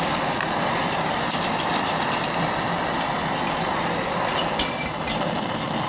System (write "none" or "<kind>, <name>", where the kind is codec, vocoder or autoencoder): none